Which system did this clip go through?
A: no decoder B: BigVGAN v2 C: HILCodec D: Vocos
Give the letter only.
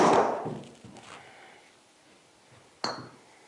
A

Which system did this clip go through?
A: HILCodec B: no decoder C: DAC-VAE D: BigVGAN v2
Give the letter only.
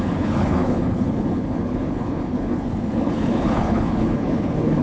A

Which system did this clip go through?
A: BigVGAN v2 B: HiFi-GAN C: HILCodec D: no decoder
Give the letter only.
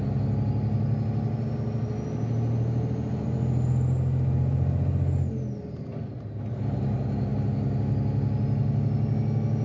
D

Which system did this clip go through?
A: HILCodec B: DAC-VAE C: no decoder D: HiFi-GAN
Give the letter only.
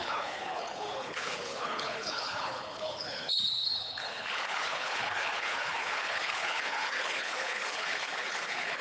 A